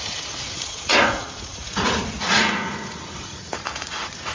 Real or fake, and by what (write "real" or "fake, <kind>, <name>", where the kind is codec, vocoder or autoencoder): fake, vocoder, Vocos